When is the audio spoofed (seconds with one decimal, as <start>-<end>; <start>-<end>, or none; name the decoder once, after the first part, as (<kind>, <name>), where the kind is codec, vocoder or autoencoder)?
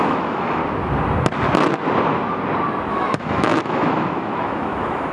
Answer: 0.0-0.6 (autoencoder, DAC-VAE); 2.9-5.1